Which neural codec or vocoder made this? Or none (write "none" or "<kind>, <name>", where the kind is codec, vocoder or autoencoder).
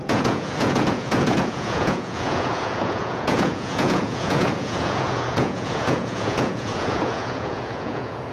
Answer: vocoder, Vocos